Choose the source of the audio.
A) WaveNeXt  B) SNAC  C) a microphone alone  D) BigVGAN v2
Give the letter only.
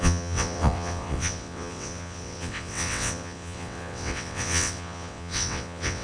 A